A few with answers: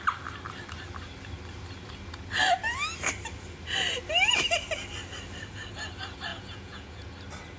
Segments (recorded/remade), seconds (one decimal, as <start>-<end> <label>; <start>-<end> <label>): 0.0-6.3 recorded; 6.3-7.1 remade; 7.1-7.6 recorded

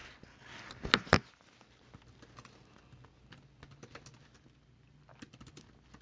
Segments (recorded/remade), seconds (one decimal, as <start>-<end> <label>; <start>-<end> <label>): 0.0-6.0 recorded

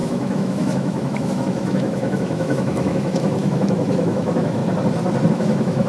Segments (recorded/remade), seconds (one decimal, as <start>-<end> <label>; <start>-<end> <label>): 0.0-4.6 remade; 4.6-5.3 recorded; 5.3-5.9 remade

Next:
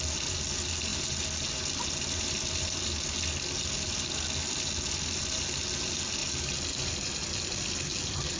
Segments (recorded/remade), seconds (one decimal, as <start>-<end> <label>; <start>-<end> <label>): 0.0-8.4 recorded